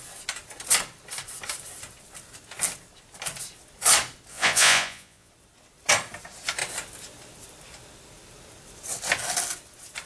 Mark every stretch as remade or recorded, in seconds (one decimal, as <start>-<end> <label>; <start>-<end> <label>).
0.0-4.3 recorded; 4.3-5.3 remade; 5.3-10.1 recorded